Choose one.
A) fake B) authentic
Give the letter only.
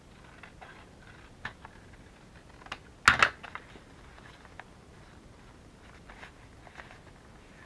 B